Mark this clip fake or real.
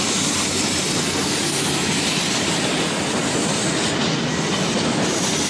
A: real